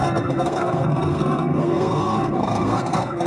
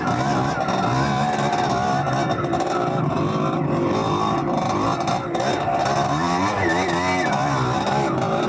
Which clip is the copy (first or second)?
first